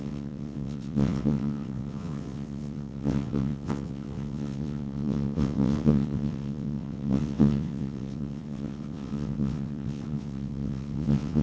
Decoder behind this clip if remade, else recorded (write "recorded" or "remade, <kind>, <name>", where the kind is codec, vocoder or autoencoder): remade, vocoder, WaveNeXt